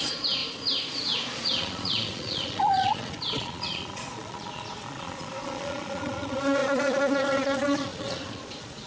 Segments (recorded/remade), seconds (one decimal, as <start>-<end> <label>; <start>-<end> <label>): 0.0-0.4 remade; 0.4-0.9 recorded; 0.9-8.9 remade